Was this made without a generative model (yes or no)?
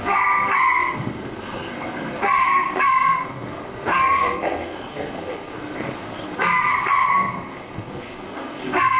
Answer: no